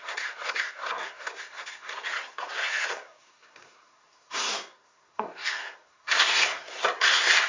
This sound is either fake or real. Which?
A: fake